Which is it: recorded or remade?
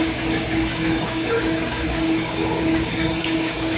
remade